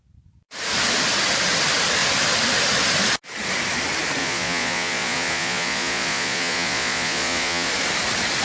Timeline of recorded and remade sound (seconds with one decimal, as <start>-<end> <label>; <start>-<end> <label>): 0.0-4.2 recorded; 4.2-7.7 remade; 7.7-8.4 recorded